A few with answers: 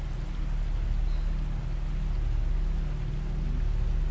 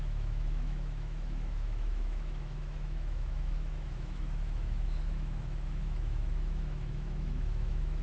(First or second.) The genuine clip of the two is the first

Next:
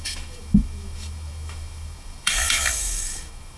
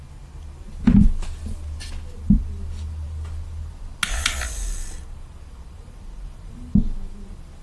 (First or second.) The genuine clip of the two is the second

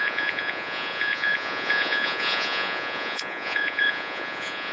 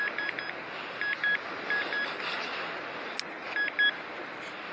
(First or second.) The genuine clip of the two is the second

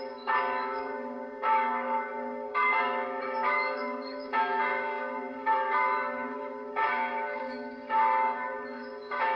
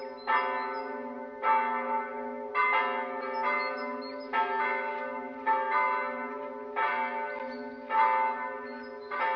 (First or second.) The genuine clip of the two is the second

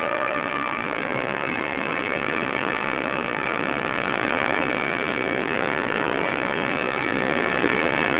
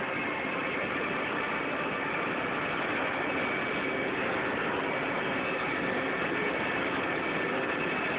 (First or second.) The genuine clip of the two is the second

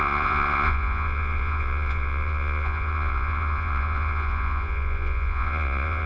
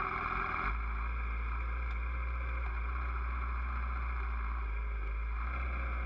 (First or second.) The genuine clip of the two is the second